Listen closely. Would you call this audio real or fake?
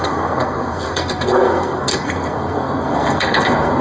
fake